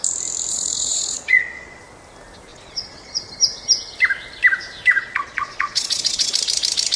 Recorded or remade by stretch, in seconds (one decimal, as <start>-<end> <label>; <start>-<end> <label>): 0.0-0.5 recorded; 0.5-1.8 remade; 1.8-2.5 recorded; 2.5-3.2 remade; 3.2-4.9 recorded; 4.9-6.3 remade; 6.3-7.0 recorded